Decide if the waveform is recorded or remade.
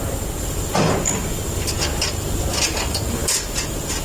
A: recorded